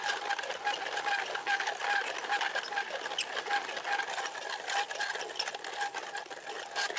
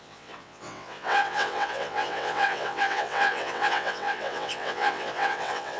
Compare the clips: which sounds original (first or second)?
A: first